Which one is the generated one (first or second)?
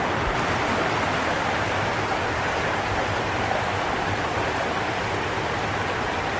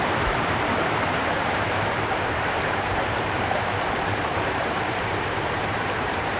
second